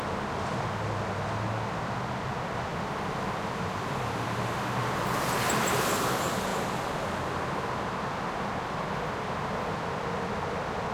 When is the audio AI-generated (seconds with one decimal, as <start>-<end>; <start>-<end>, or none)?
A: none